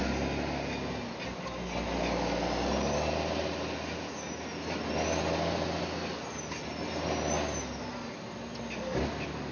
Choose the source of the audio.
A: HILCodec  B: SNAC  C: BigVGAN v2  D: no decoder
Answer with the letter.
D